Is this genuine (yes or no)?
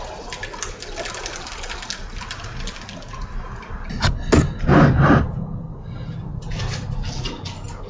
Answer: yes